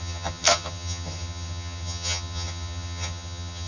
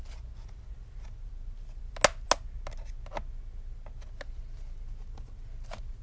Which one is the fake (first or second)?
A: first